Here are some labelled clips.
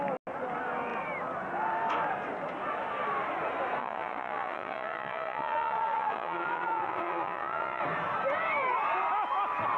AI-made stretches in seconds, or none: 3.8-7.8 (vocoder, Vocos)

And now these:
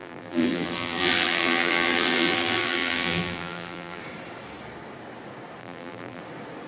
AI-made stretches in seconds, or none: 0.0-4.0 (vocoder, BigVGAN v2); 5.6-6.2

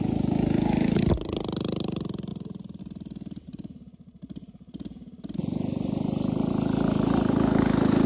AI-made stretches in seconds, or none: none

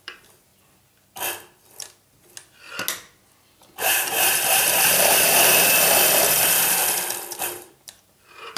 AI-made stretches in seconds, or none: 0.0-0.5 (vocoder, BigVGAN v2); 3.4-6.8; 7.4-8.6

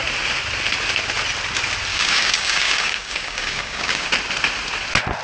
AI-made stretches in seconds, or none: 1.9-4.1 (codec, DAC)

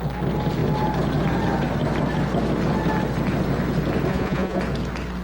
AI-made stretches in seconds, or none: 4.1-4.6 (vocoder, Vocos)